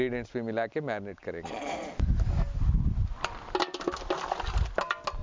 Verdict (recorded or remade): recorded